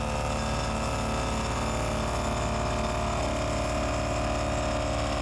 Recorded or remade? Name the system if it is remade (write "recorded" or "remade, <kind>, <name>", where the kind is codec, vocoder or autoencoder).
recorded